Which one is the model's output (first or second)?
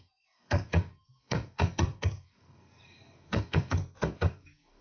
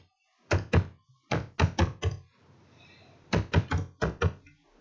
first